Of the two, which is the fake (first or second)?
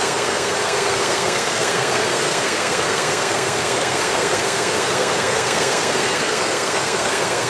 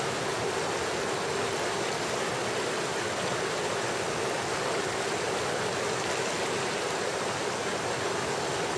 first